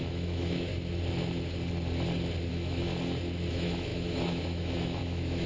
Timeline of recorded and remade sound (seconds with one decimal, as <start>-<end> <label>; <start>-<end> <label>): 0.0-0.7 remade; 0.7-2.5 recorded; 2.5-2.9 remade; 2.9-3.5 recorded; 3.5-5.5 remade